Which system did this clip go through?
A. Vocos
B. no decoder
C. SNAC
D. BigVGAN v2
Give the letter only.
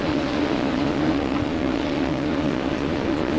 A